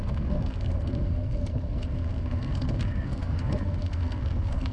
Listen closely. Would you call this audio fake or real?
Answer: fake